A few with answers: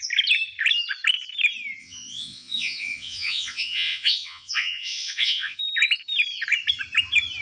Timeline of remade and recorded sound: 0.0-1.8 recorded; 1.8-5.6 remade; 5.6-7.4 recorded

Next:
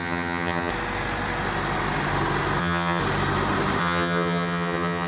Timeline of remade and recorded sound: 0.0-0.7 remade; 0.7-2.6 recorded; 2.6-3.0 remade; 3.0-3.8 recorded; 3.8-5.1 remade

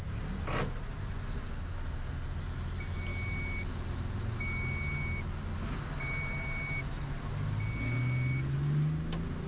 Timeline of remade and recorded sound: 0.0-9.5 recorded

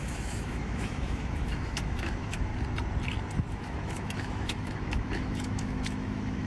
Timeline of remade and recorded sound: 0.0-2.5 remade; 2.5-3.5 recorded; 3.5-6.5 remade

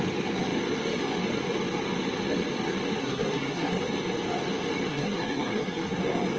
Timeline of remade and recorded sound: 0.0-3.0 recorded; 3.0-3.8 remade; 3.8-4.9 recorded; 4.9-6.0 remade; 6.0-6.4 recorded